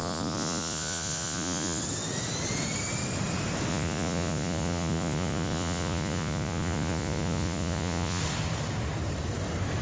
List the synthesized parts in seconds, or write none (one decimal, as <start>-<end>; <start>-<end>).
0.0-1.8; 3.7-8.2